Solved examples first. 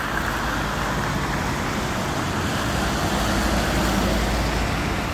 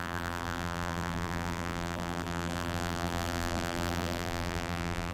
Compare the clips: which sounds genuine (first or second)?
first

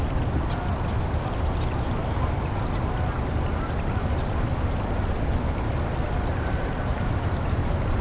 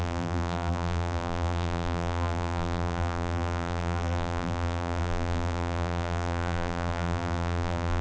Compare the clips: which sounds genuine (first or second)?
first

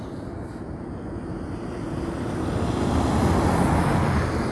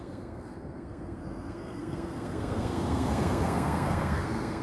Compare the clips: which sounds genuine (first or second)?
first